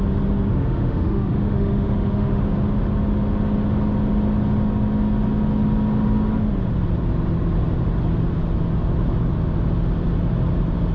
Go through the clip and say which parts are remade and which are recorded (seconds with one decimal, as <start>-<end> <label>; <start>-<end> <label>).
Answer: 0.0-0.5 recorded; 0.5-2.4 remade; 2.4-10.9 recorded